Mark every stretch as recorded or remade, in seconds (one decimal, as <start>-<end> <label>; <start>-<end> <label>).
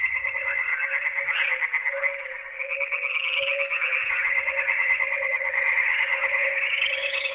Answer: 0.0-0.7 remade; 0.7-4.1 recorded; 4.1-7.3 remade